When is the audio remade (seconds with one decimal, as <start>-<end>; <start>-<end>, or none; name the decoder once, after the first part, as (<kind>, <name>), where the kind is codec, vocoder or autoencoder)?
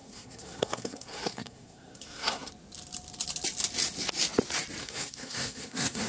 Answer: 0.0-2.5 (codec, SNAC); 4.8-6.1